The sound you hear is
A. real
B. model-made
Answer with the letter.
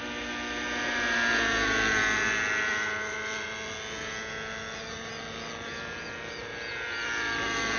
A